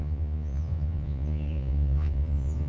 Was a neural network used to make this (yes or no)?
yes